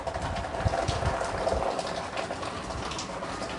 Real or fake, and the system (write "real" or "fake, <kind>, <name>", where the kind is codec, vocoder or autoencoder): real